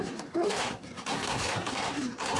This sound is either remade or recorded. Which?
remade